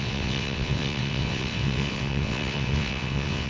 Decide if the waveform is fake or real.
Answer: fake